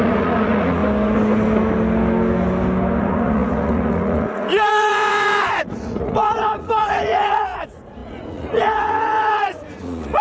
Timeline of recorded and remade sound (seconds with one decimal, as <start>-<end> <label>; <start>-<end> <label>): 0.0-0.8 remade; 0.8-3.0 recorded; 3.0-10.2 remade